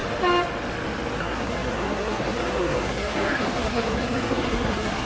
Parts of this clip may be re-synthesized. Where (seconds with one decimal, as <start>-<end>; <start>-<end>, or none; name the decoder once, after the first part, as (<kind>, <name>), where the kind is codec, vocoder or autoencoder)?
1.2-5.1 (codec, SNAC)